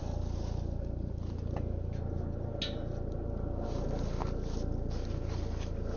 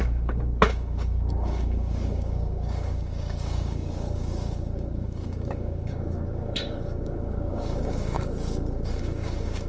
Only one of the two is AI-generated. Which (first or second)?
second